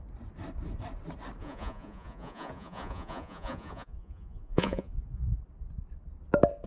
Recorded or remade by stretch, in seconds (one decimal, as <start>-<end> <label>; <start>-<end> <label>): 0.0-1.4 recorded; 1.4-5.4 remade; 5.4-6.7 recorded